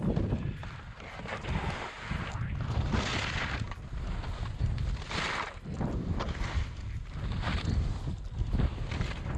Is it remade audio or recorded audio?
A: recorded